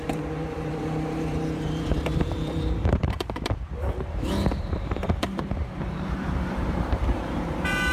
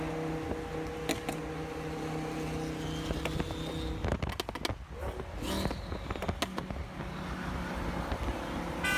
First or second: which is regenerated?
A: first